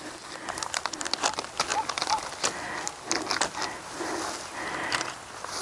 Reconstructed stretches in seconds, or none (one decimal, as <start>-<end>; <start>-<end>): none